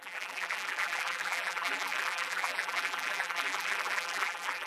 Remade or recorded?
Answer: remade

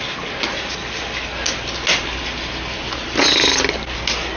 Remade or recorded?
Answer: recorded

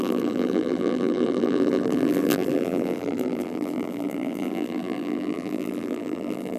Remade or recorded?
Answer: remade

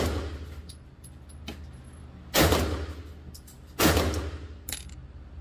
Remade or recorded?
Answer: recorded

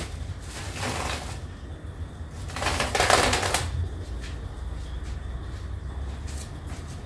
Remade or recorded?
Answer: recorded